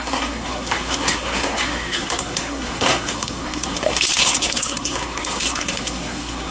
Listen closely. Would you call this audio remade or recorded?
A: remade